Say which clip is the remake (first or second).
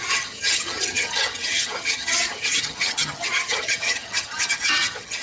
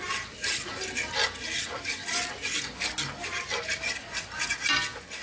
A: first